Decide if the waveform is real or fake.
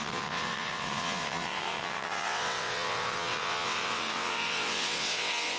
fake